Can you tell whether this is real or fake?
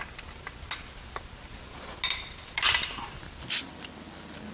real